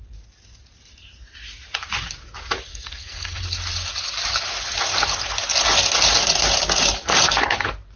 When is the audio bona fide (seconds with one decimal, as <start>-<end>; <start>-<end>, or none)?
0.0-2.7; 3.4-8.0